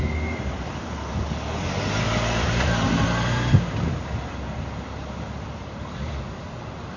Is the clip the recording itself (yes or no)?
yes